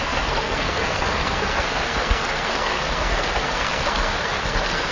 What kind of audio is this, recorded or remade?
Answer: remade